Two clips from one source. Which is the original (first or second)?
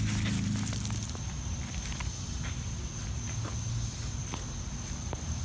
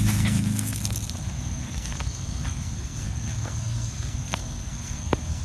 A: first